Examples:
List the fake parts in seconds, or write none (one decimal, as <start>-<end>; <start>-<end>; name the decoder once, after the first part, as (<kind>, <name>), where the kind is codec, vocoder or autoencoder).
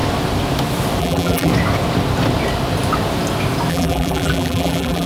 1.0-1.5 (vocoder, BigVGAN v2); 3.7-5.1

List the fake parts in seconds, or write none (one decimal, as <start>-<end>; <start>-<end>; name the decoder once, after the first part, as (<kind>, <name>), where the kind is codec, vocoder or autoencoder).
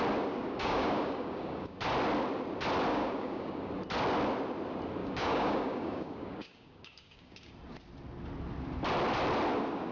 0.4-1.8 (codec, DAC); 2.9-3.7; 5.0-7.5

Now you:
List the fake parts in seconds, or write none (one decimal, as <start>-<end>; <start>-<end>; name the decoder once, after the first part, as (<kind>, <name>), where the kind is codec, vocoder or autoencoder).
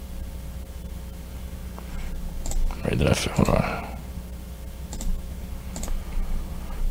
none